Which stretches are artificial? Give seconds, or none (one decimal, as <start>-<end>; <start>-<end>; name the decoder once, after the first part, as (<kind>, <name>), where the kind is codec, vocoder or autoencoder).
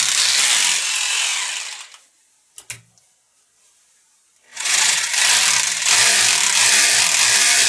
4.5-5.1 (vocoder, Vocos)